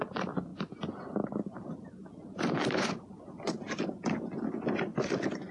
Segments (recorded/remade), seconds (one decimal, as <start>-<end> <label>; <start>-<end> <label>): 0.0-5.5 recorded